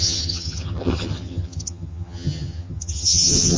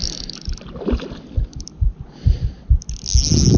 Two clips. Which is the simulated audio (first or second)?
first